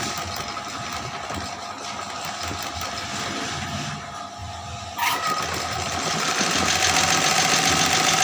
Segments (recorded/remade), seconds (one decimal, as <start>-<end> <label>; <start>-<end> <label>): 0.0-8.2 recorded